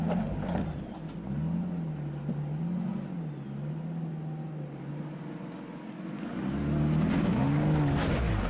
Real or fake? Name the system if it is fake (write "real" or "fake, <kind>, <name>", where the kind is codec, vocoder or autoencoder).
real